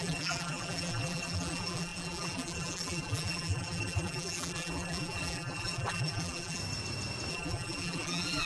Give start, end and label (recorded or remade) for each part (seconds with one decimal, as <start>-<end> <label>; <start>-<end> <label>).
0.0-6.6 remade; 6.6-7.3 recorded; 7.3-8.5 remade